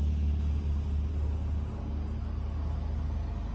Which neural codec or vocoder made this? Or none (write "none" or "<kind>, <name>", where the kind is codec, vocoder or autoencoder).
none